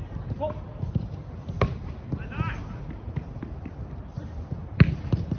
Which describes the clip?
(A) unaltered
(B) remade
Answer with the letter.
A